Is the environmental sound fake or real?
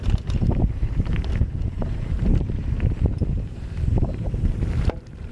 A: fake